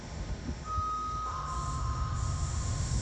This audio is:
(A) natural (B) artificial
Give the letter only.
B